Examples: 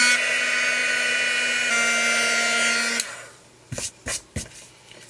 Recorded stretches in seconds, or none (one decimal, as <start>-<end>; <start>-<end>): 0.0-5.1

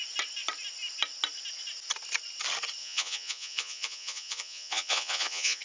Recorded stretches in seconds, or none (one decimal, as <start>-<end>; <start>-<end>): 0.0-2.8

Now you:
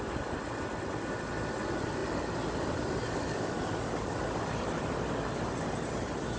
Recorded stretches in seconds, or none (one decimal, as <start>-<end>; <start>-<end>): 0.0-6.4

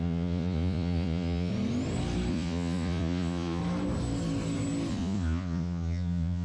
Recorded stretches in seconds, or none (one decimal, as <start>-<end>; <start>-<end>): 1.5-2.3; 3.6-4.9

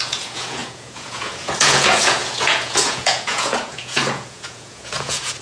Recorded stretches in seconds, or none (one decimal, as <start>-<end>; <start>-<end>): none

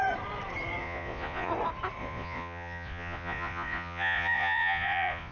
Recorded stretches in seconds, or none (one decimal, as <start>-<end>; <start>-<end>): 0.0-0.8; 1.5-2.0